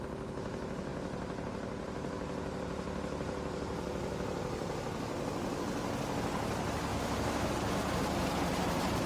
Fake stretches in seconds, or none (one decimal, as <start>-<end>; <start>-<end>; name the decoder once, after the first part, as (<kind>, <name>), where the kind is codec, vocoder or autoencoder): 6.9-7.5 (autoencoder, DAC-VAE)